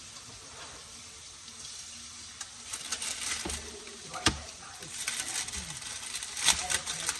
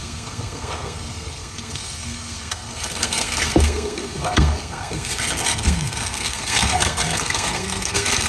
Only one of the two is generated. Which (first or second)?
second